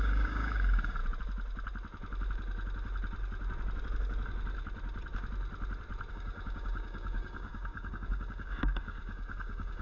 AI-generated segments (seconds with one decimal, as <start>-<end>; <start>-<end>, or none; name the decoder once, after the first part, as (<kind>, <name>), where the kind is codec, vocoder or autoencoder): 0.0-1.0 (codec, DAC); 6.1-9.8